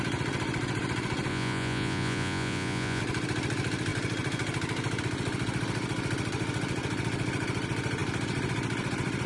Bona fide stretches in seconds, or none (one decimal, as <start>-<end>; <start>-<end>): 0.0-1.3; 3.0-9.3